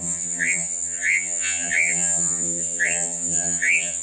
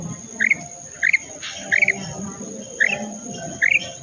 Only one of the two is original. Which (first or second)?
second